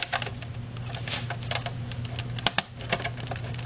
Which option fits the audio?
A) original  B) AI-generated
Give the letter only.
A